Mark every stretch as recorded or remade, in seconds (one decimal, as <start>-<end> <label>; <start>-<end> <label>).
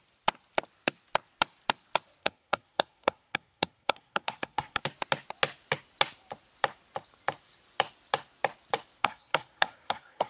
0.0-2.2 recorded; 2.2-4.8 remade; 4.8-9.0 recorded; 9.0-10.3 remade